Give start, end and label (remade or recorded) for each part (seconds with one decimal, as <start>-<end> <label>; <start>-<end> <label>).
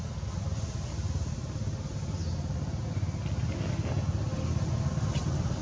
0.0-5.6 recorded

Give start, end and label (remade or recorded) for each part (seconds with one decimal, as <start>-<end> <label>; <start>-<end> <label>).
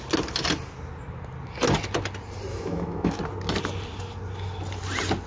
0.0-2.5 recorded; 2.5-3.2 remade; 3.2-5.3 recorded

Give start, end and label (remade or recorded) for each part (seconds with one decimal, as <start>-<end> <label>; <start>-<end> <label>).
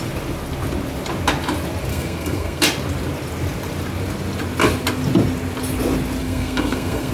0.0-1.9 recorded; 1.9-2.6 remade; 2.6-6.2 recorded; 6.2-7.1 remade